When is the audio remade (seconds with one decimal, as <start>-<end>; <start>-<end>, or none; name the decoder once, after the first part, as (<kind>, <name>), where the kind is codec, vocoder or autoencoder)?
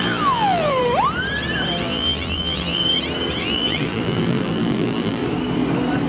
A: 0.0-0.8 (vocoder, BigVGAN v2); 1.8-2.8; 3.4-5.2